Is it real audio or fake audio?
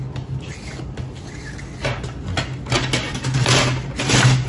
real